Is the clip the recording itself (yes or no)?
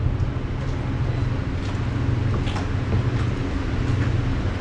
yes